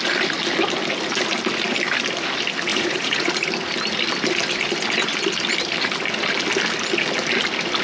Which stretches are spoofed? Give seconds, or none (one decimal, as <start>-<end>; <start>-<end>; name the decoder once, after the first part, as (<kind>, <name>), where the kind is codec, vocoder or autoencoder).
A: 2.7-3.3 (vocoder, Vocos)